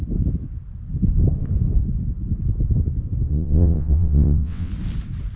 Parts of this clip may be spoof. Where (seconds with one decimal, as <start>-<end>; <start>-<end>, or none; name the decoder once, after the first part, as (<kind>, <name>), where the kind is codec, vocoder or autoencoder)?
3.3-4.7 (vocoder, WaveNeXt)